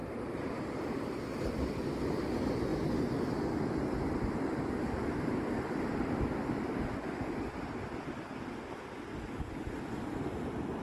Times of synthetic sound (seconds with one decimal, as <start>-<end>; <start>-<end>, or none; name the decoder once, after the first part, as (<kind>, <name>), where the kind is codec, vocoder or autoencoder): none